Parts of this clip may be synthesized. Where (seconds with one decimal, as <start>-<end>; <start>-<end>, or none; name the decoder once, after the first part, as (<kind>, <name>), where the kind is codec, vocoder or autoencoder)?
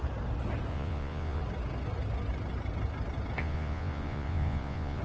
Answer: 0.7-1.4 (vocoder, Vocos); 3.4-5.0